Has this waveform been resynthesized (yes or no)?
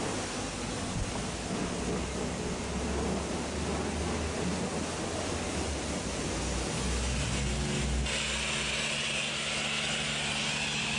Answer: no